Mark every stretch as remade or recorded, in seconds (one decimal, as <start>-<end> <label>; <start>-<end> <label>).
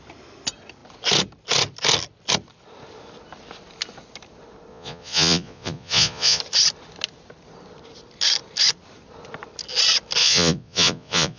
0.0-4.7 recorded; 4.7-6.4 remade; 6.4-10.2 recorded; 10.2-11.4 remade